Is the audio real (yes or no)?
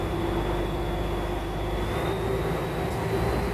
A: yes